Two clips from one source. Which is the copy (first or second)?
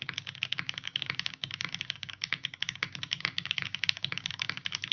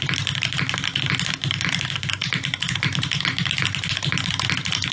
first